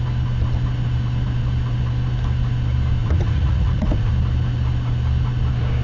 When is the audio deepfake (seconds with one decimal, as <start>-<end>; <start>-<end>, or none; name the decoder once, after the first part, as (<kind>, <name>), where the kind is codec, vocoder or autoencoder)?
3.0-4.1 (vocoder, Vocos)